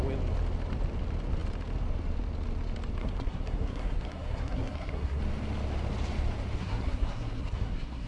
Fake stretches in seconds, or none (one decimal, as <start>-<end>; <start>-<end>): 3.0-5.2; 6.6-8.1

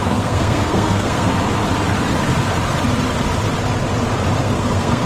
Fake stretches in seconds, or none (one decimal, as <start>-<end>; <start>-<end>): 0.0-1.3; 4.4-5.1

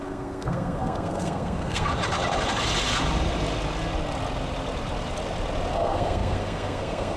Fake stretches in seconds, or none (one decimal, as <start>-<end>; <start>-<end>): 0.0-1.9; 5.7-7.2

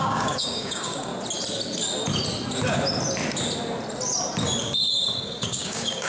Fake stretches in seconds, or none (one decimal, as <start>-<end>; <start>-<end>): 0.0-1.1; 4.6-6.1

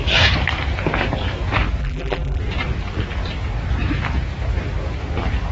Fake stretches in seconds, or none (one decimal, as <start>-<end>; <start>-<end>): 1.8-2.4

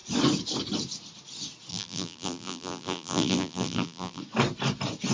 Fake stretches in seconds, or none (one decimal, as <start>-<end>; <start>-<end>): 1.7-4.2

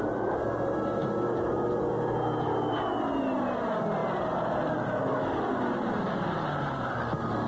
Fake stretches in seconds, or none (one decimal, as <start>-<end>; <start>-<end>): 4.0-6.9